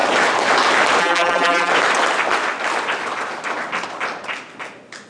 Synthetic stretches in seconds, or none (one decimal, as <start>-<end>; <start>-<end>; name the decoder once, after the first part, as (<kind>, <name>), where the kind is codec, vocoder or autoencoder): 1.0-1.7 (vocoder, BigVGAN v2)